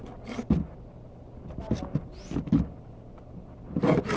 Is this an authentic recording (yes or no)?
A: yes